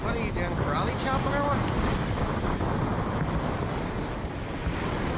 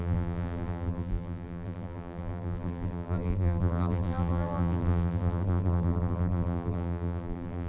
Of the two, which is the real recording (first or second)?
first